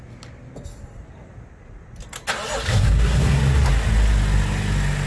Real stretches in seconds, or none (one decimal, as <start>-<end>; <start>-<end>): 0.0-2.7; 3.4-5.1